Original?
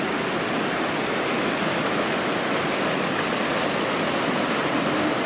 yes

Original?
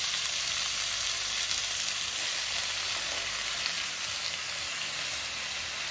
yes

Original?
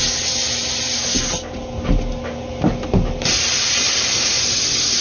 yes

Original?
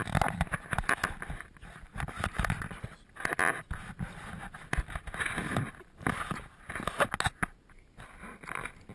yes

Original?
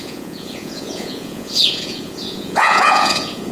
no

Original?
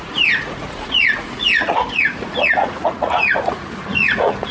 no